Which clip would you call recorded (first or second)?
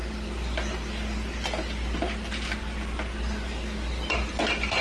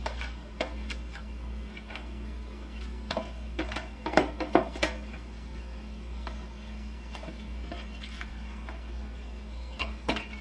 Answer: first